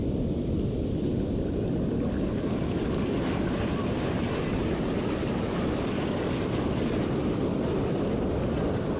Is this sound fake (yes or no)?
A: no